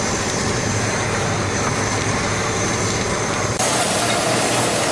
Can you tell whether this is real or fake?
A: fake